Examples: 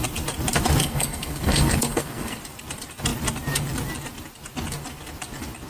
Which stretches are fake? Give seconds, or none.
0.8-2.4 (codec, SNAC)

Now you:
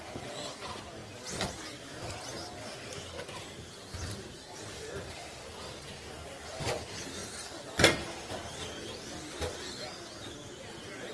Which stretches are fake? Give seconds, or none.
none

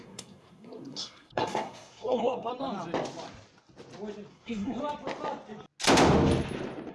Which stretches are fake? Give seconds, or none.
0.0-2.5 (codec, SNAC); 4.3-4.8

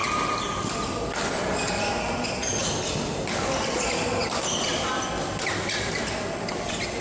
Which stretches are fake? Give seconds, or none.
none

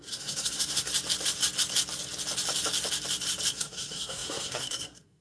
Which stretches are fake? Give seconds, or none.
0.0-0.9 (codec, SNAC); 3.5-5.2

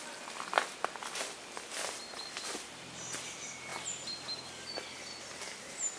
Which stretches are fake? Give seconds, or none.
none

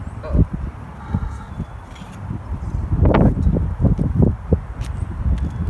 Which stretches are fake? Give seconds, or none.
1.0-1.5 (codec, SNAC)

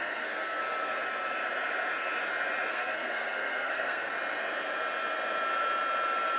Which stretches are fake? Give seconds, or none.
0.0-0.6 (codec, SNAC); 2.7-4.1